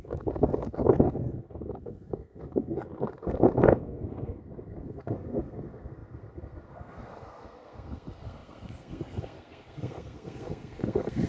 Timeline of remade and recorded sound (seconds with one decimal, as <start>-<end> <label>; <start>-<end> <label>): 0.0-11.3 remade